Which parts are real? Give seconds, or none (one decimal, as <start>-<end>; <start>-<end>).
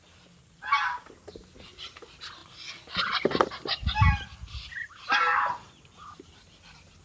0.0-7.0